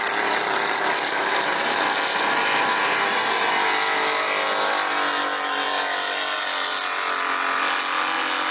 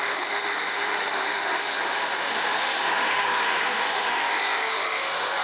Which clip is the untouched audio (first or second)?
first